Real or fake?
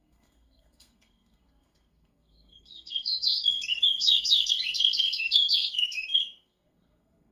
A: fake